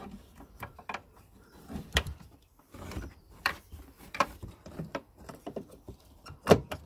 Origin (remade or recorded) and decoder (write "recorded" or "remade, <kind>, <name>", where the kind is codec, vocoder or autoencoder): remade, vocoder, BigVGAN v2